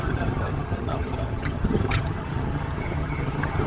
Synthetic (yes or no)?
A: yes